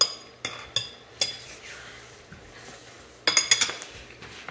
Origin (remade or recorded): recorded